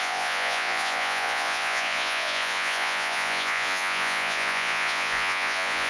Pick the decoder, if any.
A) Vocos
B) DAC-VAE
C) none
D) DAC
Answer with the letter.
A